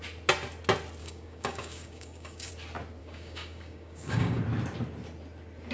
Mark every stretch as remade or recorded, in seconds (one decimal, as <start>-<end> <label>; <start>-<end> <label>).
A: 0.0-1.0 recorded; 1.0-2.5 remade; 2.5-3.0 recorded; 3.0-4.4 remade; 4.4-5.7 recorded